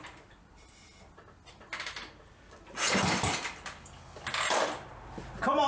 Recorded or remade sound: remade